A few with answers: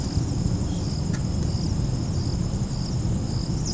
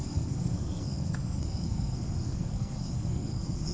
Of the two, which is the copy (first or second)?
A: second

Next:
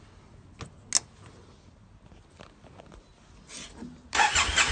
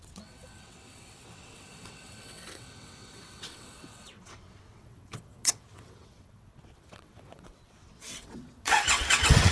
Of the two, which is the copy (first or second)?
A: second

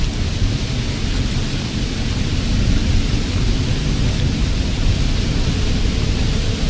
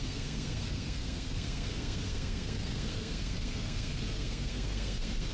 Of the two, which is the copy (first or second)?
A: second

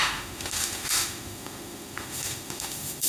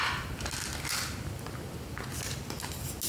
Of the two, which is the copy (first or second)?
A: first